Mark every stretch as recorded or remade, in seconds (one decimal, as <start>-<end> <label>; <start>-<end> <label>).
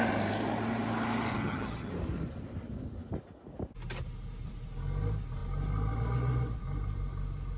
0.0-1.3 recorded; 1.3-1.9 remade; 1.9-7.6 recorded